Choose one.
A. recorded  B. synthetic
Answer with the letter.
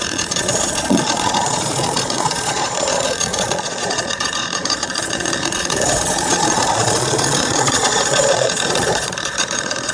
B